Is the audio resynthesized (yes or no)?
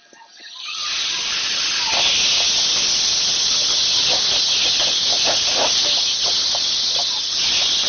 no